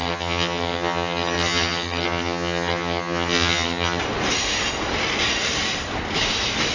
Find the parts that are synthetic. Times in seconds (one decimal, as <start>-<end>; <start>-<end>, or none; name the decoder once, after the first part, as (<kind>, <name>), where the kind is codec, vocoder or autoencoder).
0.0-4.0 (vocoder, HiFi-GAN)